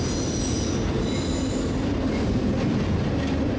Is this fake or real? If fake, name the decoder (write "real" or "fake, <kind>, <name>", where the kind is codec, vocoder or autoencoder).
real